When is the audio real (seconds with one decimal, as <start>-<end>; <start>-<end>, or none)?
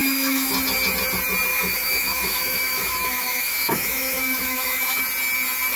0.5-1.5; 5.0-5.8